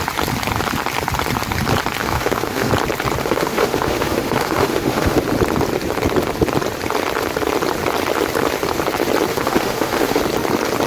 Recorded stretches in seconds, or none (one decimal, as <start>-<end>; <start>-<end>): 0.0-2.0; 2.7-3.2; 5.2-9.3; 10.2-10.9